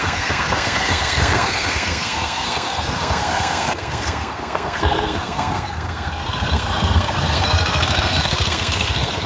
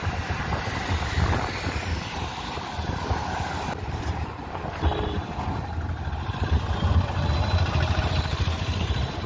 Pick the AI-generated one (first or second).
first